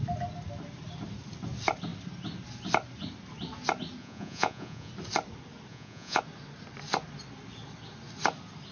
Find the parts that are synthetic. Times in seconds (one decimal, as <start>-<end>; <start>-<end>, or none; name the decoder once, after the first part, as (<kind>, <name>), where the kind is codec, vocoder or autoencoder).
4.0-4.9 (vocoder, Vocos); 5.7-6.2